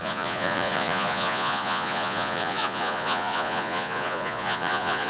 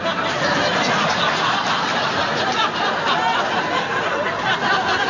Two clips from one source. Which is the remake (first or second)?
first